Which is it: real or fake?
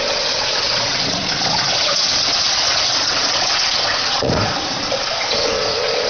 fake